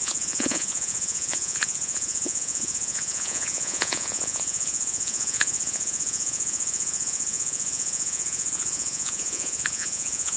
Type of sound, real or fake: fake